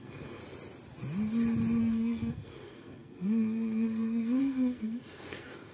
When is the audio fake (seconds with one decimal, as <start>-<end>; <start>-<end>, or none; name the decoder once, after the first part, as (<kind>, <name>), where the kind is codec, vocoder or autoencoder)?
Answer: 0.0-0.4 (codec, SNAC); 1.8-5.7